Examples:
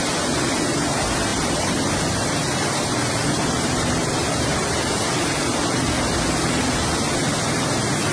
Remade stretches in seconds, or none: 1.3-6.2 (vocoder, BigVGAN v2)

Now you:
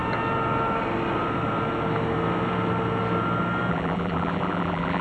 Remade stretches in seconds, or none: 3.7-5.0 (vocoder, BigVGAN v2)

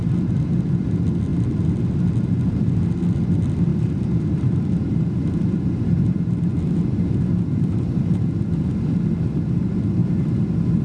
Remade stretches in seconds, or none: 3.7-8.6 (vocoder, BigVGAN v2); 10.0-10.8

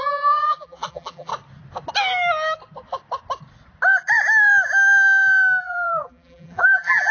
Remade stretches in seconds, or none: 0.0-1.3 (vocoder, BigVGAN v2); 5.6-7.1

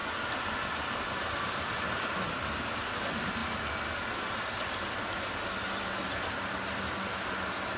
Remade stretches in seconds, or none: 0.0-1.2 (vocoder, BigVGAN v2)